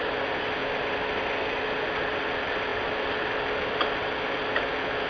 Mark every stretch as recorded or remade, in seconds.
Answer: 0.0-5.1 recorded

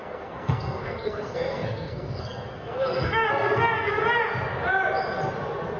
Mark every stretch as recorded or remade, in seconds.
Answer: 0.0-4.0 remade; 4.0-5.8 recorded

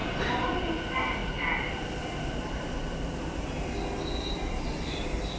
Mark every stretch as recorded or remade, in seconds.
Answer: 0.0-5.4 recorded

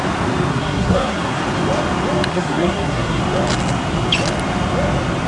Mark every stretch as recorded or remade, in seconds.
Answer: 0.0-0.5 recorded; 0.5-1.4 remade; 1.4-2.3 recorded; 2.3-3.2 remade; 3.2-5.3 recorded

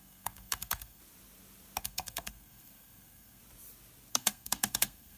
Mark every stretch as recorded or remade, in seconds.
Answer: 0.0-1.0 remade; 1.0-1.8 recorded; 1.8-3.4 remade; 3.4-4.1 recorded; 4.1-5.2 remade

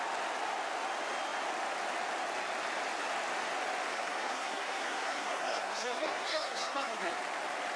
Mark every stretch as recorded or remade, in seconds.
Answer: 0.0-3.9 recorded; 3.9-7.1 remade; 7.1-7.8 recorded

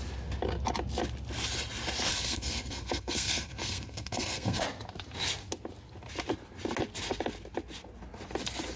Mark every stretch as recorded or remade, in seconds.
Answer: 0.0-2.1 recorded; 2.1-4.6 remade; 4.6-8.8 recorded